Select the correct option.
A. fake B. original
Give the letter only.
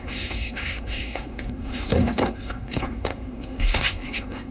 A